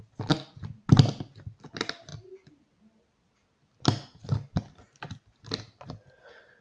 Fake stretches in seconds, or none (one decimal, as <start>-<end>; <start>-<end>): none